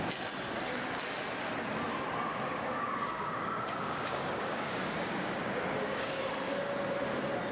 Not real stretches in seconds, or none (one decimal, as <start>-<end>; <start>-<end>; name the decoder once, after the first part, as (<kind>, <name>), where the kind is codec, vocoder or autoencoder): 2.3-6.3 (codec, DAC)